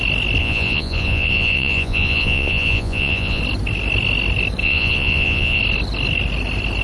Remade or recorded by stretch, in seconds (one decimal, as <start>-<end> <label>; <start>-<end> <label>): 0.0-0.4 recorded; 0.4-3.4 remade; 3.4-4.6 recorded; 4.6-5.6 remade; 5.6-6.8 recorded